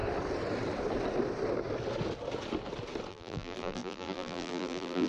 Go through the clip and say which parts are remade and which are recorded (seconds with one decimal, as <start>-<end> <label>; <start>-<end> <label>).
0.0-3.1 recorded; 3.1-5.1 remade